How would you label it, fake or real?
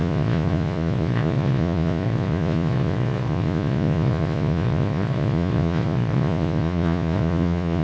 fake